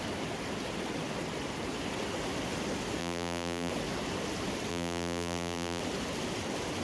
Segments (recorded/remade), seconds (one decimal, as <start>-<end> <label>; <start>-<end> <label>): 0.0-3.0 recorded; 3.0-3.7 remade; 3.7-4.7 recorded; 4.7-5.8 remade; 5.8-6.8 recorded